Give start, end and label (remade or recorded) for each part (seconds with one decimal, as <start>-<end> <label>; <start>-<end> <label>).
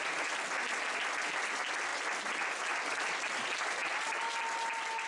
0.0-5.1 recorded